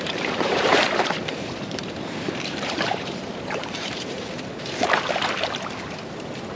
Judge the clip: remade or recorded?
remade